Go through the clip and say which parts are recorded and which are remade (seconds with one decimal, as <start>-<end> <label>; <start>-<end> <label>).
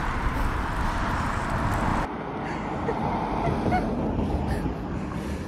0.0-1.9 recorded; 1.9-5.5 remade